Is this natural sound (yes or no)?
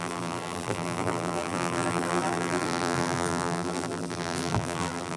no